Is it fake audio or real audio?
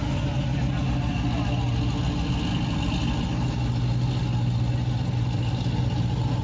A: real